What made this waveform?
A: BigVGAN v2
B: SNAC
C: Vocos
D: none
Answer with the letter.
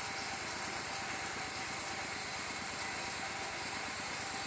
D